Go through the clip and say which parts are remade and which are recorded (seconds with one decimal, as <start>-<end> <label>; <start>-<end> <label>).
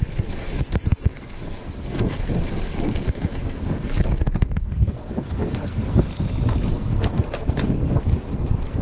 0.0-6.1 remade; 6.1-6.7 recorded; 6.7-8.8 remade